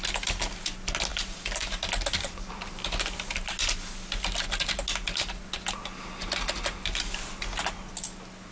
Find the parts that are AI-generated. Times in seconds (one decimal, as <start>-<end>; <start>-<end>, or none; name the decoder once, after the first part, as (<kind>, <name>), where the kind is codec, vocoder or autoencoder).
1.1-1.8 (vocoder, BigVGAN v2)